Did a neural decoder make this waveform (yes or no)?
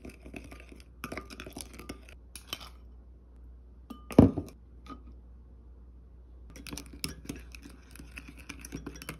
no